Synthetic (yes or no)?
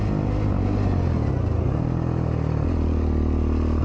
no